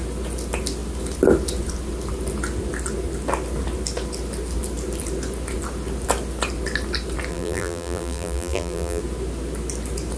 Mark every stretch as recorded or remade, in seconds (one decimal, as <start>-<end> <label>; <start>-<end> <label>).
0.0-7.3 recorded; 7.3-9.0 remade; 9.0-10.2 recorded